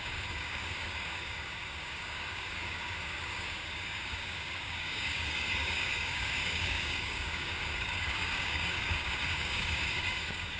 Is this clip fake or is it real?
fake